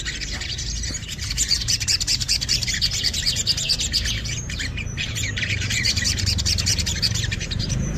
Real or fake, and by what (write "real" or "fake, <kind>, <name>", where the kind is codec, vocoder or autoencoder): fake, vocoder, BigVGAN v2